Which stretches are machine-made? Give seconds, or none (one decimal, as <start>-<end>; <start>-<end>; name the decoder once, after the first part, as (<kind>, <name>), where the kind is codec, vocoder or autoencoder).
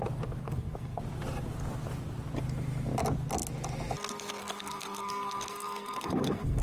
0.4-1.0 (codec, SNAC); 4.4-6.6